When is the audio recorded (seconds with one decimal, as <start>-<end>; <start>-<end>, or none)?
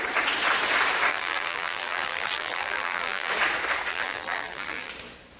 0.0-1.1; 3.3-3.9; 4.9-5.4